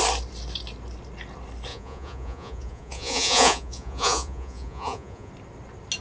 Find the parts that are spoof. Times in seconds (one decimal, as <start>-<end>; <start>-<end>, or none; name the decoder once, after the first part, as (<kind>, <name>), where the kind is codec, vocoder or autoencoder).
1.7-5.3 (vocoder, Vocos)